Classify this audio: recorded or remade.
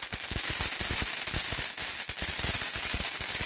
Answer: recorded